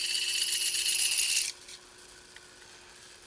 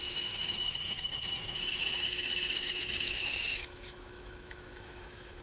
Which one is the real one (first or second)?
first